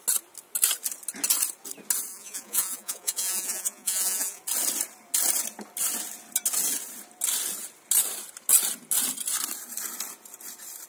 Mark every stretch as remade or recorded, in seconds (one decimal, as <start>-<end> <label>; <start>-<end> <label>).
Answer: 0.0-2.1 recorded; 2.1-4.4 remade; 4.4-10.9 recorded